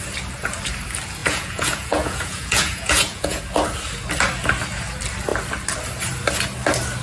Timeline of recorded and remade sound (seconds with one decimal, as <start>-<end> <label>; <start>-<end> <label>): 0.0-1.2 recorded; 1.2-3.4 remade; 3.4-7.0 recorded